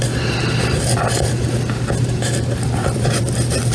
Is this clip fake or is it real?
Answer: fake